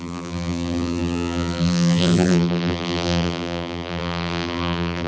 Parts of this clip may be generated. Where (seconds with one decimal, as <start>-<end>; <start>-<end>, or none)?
0.0-5.1